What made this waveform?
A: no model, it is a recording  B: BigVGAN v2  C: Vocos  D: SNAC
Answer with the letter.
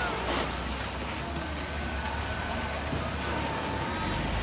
A